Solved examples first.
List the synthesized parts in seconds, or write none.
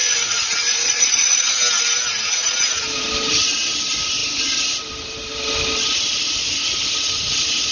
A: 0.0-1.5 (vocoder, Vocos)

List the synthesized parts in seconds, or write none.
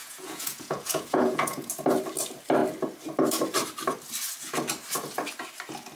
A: 0.0-1.7 (vocoder, Vocos)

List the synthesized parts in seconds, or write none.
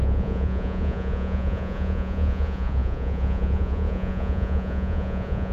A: 0.0-5.5 (vocoder, Vocos)